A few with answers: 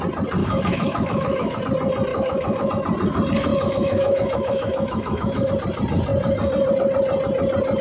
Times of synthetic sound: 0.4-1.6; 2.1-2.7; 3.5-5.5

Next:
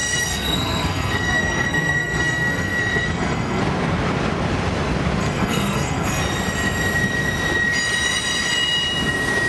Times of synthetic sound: 0.0-3.6; 5.2-6.2

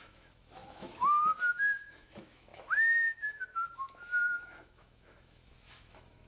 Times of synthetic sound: 0.0-6.3

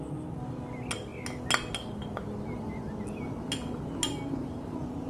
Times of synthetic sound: none